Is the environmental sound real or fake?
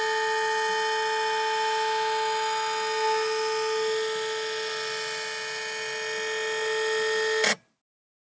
real